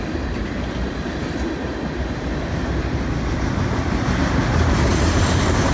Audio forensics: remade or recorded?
recorded